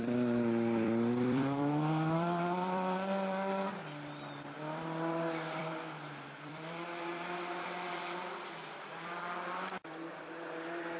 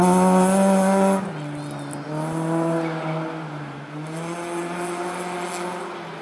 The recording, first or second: second